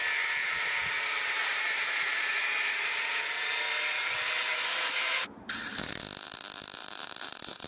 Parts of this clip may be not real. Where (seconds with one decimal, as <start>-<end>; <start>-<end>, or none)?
0.4-3.2; 4.7-6.0; 6.8-7.7